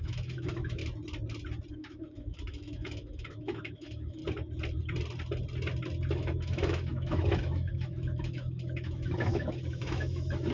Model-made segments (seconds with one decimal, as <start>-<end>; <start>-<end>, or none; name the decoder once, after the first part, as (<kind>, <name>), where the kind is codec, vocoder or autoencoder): 0.0-0.8 (autoencoder, DAC-VAE); 1.7-4.2; 6.1-10.5